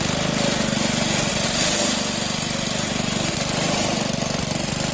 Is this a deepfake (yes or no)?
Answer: no